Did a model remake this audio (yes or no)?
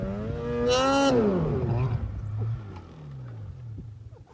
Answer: no